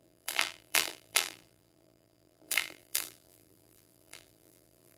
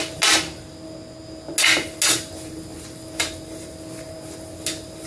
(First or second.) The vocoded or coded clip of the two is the first